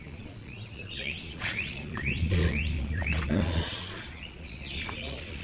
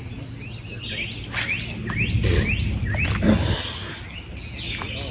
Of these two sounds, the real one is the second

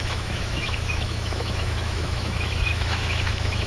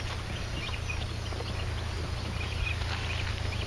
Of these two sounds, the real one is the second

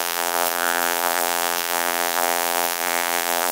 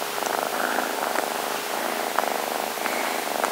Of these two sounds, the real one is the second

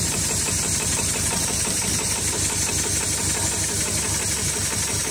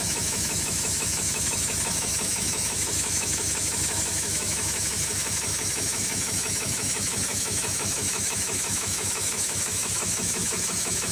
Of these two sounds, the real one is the first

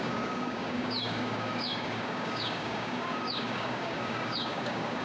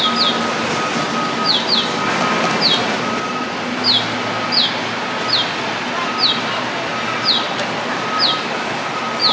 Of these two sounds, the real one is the second